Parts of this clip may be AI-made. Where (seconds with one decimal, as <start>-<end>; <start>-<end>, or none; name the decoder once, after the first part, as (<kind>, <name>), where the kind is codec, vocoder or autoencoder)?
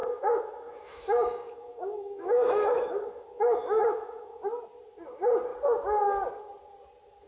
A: 0.0-4.4 (autoencoder, DAC-VAE)